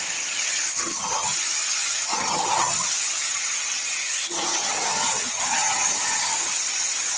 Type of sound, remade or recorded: remade